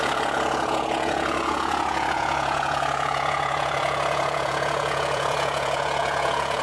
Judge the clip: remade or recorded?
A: remade